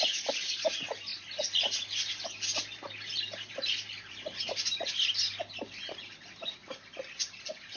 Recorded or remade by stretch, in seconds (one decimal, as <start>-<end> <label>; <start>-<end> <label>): 0.0-7.8 recorded